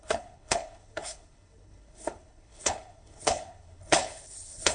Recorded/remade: remade